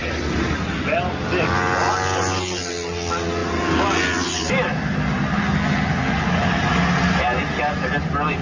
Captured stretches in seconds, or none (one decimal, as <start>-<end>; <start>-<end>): 0.0-8.4